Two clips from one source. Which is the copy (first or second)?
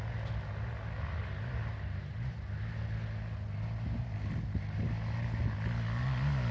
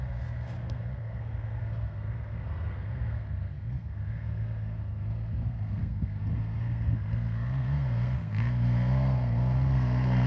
second